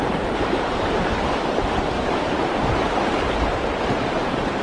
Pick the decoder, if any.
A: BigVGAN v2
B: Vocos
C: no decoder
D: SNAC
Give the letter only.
A